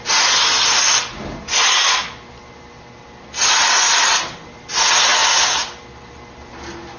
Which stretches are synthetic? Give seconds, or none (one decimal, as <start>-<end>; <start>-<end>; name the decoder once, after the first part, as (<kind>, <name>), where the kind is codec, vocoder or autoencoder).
none

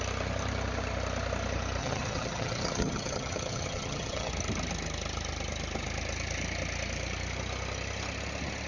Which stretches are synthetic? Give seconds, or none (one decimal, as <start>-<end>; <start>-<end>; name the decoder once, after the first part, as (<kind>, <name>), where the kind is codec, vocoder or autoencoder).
1.8-4.3 (vocoder, HiFi-GAN)